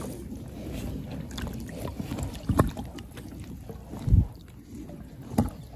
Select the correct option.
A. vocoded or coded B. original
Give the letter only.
B